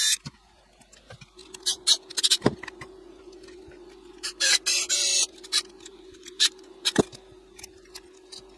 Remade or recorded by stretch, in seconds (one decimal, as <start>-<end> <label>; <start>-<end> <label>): 0.0-5.9 recorded; 5.9-6.6 remade; 6.6-8.6 recorded